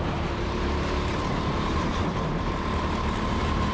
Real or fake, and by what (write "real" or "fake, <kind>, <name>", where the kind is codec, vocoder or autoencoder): fake, vocoder, BigVGAN v2